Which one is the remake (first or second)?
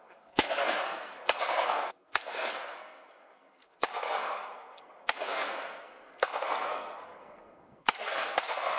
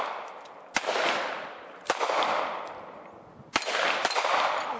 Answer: first